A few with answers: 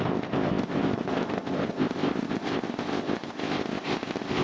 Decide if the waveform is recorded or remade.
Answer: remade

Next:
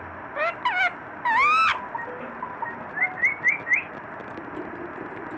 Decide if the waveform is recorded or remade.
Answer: recorded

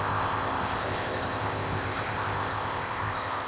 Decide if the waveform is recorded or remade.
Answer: remade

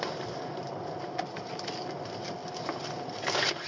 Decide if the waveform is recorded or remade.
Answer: recorded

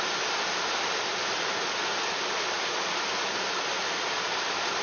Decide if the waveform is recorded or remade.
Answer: recorded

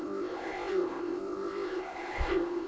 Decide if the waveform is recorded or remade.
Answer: remade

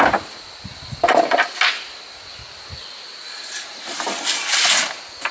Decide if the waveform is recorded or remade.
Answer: recorded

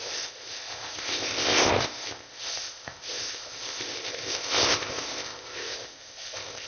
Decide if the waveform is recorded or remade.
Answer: remade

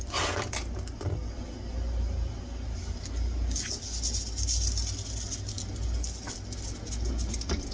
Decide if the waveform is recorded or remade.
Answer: recorded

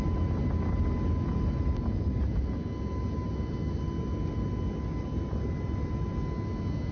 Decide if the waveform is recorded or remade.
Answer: recorded